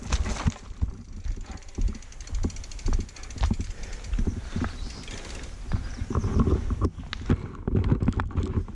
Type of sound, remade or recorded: recorded